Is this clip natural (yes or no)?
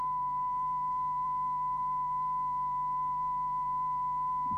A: no